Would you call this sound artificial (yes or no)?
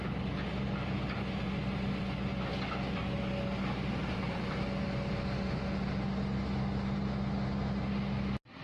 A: no